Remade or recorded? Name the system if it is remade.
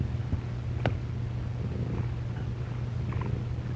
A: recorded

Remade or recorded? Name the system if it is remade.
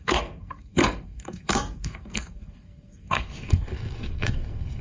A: remade, codec, SNAC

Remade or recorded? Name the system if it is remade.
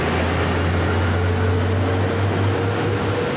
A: recorded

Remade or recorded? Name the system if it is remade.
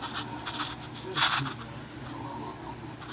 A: recorded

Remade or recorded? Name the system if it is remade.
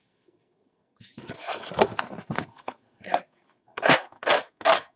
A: remade, codec, SNAC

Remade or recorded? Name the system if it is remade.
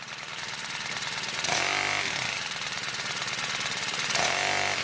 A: recorded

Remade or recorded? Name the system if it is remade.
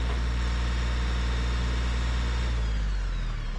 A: recorded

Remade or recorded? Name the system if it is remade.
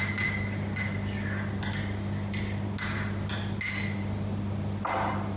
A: recorded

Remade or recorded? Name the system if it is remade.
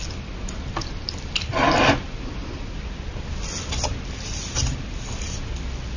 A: recorded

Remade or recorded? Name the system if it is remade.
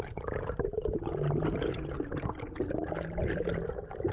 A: recorded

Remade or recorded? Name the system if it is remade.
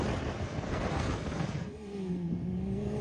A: remade, codec, SNAC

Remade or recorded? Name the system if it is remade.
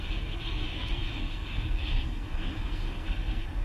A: remade, codec, SNAC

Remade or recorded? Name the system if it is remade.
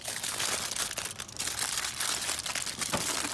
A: recorded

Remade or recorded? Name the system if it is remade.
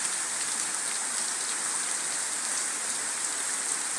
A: recorded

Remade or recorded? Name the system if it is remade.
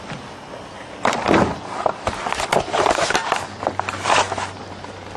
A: recorded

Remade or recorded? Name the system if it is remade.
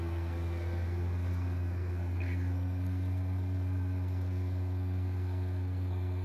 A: remade, codec, SNAC